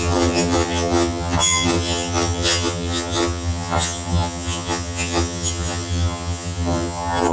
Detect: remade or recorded remade